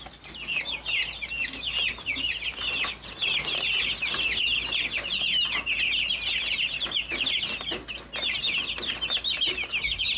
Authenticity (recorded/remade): recorded